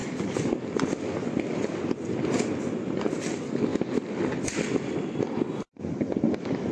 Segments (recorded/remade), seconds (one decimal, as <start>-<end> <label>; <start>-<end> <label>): 0.0-6.7 recorded